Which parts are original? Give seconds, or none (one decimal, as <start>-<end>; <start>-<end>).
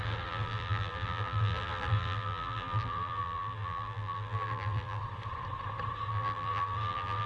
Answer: 5.0-6.1